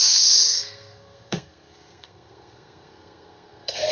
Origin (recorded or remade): remade